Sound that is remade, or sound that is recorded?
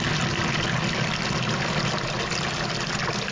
recorded